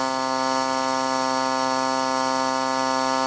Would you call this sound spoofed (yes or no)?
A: no